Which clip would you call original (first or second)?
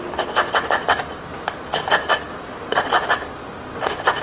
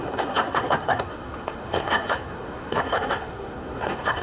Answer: first